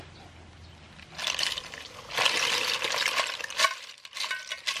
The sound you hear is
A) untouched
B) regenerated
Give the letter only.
A